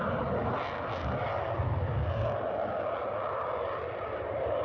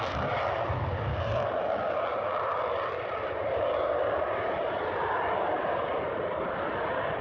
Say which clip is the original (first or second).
first